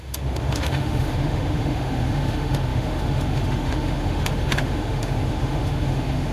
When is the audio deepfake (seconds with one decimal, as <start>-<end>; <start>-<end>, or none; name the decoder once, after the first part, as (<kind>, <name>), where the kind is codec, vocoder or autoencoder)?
0.0-6.3 (autoencoder, DAC-VAE)